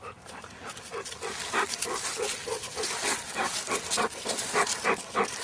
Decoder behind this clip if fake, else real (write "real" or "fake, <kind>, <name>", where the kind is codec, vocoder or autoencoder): real